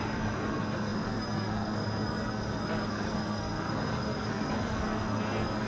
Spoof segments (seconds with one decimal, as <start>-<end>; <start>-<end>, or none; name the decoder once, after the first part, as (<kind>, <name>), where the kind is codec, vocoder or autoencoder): 0.0-5.7 (codec, SNAC)